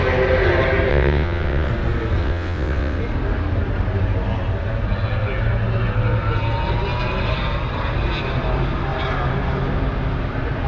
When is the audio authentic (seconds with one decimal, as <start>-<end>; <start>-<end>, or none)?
0.0-0.9; 1.7-2.2; 3.0-10.7